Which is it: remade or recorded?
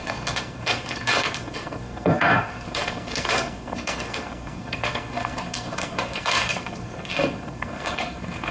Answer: remade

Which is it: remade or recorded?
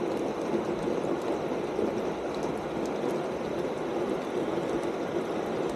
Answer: recorded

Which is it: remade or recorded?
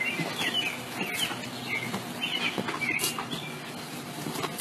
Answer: recorded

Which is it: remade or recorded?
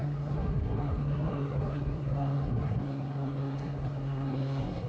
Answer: remade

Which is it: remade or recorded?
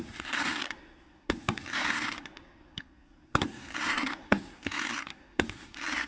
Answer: remade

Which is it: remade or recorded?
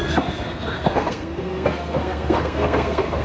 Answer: remade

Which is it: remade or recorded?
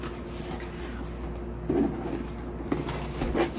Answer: recorded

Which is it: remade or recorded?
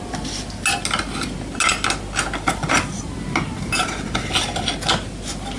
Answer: recorded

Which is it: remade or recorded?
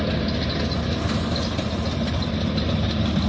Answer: recorded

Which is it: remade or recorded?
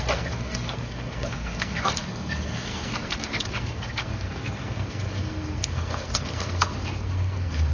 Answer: remade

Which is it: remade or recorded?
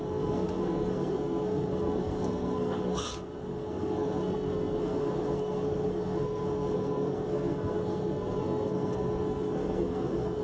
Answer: remade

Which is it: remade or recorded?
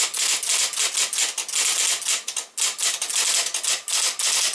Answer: recorded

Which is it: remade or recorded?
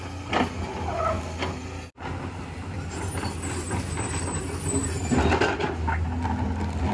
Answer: recorded